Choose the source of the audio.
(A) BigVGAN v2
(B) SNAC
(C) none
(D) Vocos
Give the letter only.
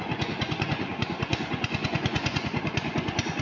D